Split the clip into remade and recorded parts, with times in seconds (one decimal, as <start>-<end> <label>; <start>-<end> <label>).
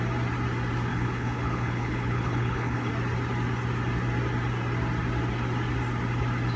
0.0-0.9 recorded; 0.9-2.9 remade; 2.9-6.6 recorded